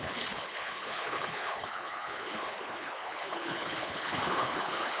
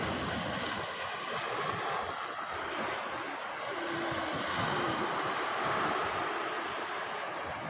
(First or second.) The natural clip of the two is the second